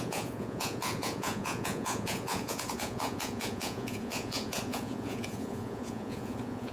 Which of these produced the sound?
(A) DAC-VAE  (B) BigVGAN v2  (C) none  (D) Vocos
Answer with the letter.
D